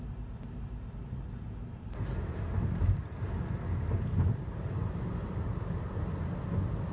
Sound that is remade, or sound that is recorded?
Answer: recorded